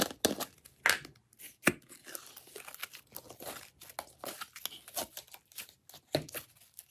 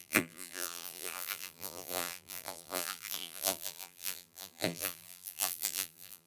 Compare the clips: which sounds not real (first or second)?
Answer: second